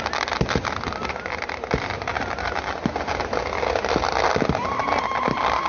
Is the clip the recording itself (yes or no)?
yes